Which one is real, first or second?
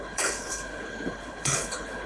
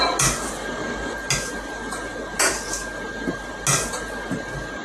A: second